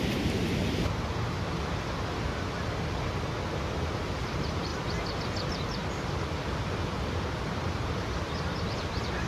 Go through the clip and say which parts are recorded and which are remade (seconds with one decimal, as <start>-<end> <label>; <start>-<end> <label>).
0.0-4.7 recorded; 4.7-9.3 remade